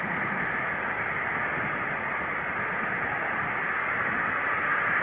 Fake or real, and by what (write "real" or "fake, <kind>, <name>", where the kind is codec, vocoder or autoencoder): real